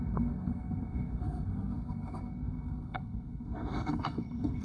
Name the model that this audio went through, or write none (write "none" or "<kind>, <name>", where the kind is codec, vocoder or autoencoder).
codec, SNAC